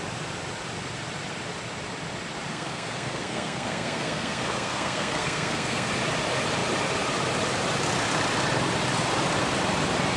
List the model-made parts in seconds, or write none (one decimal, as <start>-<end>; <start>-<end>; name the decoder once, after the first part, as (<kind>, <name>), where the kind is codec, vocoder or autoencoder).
2.5-5.9 (codec, SNAC)